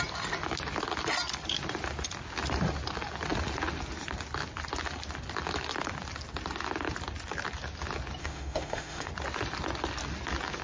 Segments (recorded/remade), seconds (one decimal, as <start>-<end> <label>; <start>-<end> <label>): 0.0-8.2 recorded; 8.2-9.1 remade; 9.1-10.6 recorded